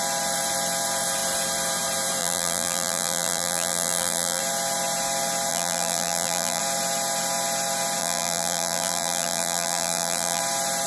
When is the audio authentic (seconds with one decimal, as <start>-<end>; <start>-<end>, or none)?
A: 0.0-2.2; 4.4-5.5; 6.6-8.0; 10.4-10.9